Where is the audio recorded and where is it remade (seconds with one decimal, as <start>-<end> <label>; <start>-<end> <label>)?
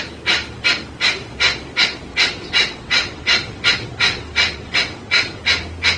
0.0-2.1 recorded; 2.1-5.4 remade; 5.4-6.0 recorded